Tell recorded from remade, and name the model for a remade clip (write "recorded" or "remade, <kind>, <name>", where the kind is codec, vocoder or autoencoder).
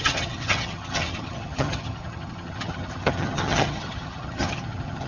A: remade, vocoder, HiFi-GAN